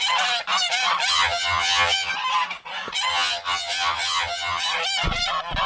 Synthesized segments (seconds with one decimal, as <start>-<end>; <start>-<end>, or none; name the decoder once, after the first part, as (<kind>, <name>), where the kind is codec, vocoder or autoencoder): 1.1-2.1 (vocoder, HiFi-GAN); 3.1-4.6